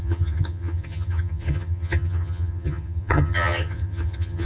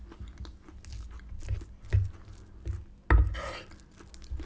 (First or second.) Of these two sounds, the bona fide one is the second